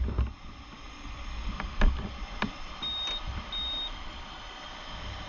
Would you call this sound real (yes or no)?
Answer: yes